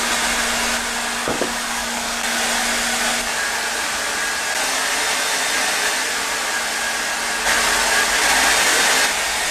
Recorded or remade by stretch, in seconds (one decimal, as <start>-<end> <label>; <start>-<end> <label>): 0.0-1.2 recorded; 1.2-2.4 remade; 2.4-9.5 recorded